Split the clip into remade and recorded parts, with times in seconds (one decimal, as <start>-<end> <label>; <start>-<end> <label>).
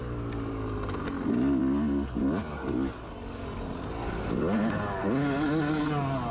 0.0-6.3 recorded